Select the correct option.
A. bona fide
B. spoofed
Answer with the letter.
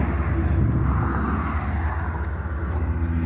A